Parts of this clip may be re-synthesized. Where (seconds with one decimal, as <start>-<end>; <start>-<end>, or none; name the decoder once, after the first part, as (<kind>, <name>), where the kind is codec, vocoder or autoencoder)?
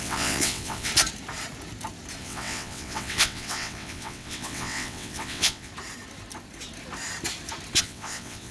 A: 0.0-0.9 (vocoder, WaveNeXt); 2.2-5.7; 7.8-8.5